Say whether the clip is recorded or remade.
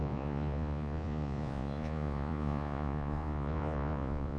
remade